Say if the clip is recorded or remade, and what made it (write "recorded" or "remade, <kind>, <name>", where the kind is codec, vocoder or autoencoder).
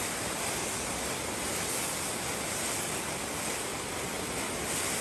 recorded